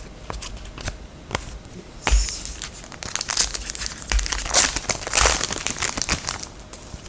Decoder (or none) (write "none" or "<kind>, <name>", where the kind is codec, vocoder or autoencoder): none